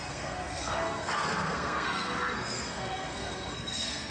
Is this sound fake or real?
fake